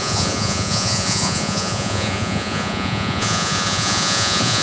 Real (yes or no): no